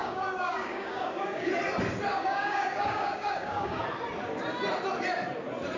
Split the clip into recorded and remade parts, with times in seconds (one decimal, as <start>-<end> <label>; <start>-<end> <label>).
0.0-1.5 remade; 1.5-2.1 recorded; 2.1-3.8 remade; 3.8-5.8 recorded